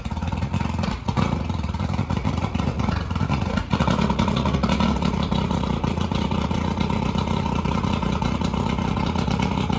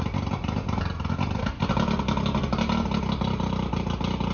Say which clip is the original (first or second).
second